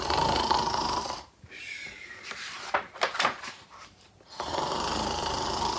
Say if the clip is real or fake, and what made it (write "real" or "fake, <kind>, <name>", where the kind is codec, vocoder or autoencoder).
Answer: fake, vocoder, BigVGAN v2